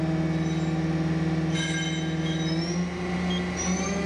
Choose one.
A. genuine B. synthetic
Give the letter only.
A